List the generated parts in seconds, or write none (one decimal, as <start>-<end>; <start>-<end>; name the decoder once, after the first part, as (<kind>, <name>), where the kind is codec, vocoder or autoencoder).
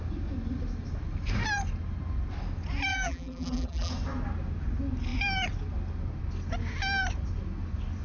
2.9-3.9 (vocoder, BigVGAN v2)